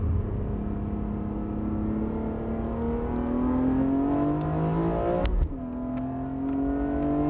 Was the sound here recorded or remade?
recorded